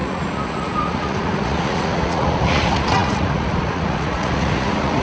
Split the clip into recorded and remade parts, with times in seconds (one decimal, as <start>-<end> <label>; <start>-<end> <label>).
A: 0.0-5.0 remade